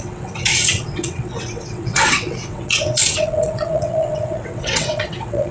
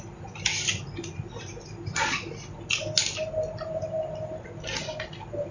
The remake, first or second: first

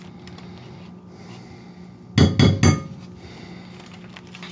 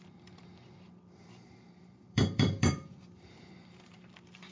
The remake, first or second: second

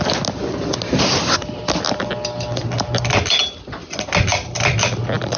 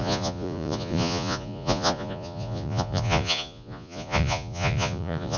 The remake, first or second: second